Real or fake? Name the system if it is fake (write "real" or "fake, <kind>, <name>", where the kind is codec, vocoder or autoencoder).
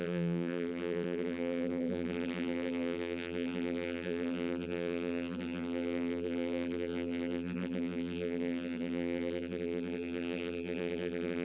fake, vocoder, BigVGAN v2